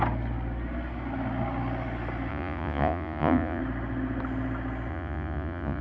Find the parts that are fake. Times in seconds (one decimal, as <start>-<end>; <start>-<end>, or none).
2.3-3.6; 4.9-5.8